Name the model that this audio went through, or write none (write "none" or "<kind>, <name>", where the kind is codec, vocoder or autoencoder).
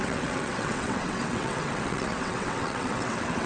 vocoder, WaveNeXt